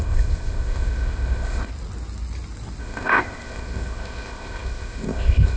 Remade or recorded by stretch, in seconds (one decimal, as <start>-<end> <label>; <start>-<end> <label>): 0.0-1.7 remade; 1.7-2.8 recorded; 2.8-5.6 remade